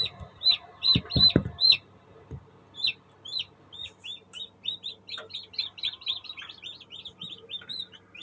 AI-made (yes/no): no